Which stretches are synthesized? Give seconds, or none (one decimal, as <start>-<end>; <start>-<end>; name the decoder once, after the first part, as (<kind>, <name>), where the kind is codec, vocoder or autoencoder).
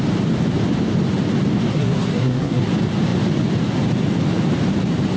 1.7-2.7 (codec, SNAC)